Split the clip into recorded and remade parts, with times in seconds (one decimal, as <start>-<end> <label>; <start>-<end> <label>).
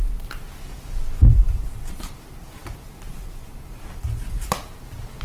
0.0-5.2 recorded